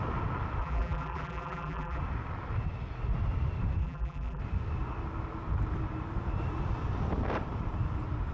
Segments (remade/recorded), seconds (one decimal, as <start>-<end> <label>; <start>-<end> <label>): 0.0-0.6 recorded; 0.6-2.0 remade; 2.0-3.8 recorded; 3.8-4.4 remade; 4.4-8.3 recorded